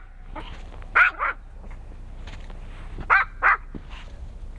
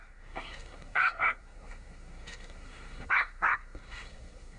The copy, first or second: second